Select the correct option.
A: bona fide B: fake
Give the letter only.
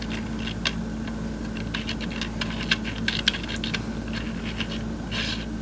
A